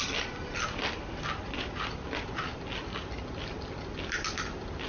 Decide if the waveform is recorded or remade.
recorded